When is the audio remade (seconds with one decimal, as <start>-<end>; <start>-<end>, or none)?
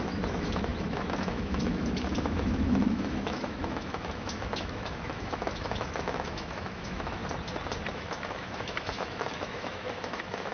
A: 0.0-7.2; 7.9-10.5